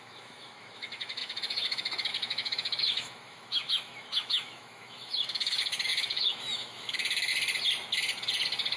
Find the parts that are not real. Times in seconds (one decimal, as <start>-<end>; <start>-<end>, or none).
0.0-7.3